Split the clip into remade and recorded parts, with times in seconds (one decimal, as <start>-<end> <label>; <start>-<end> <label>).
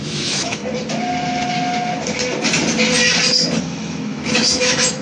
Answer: 0.0-0.6 remade; 0.6-3.6 recorded; 3.6-5.0 remade